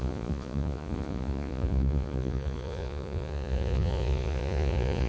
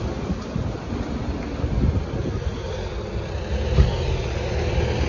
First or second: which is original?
second